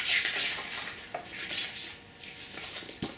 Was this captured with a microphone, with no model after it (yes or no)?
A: yes